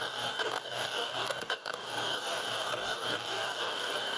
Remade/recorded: remade